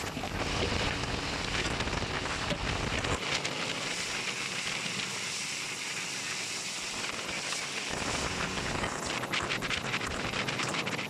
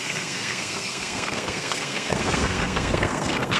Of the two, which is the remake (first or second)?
second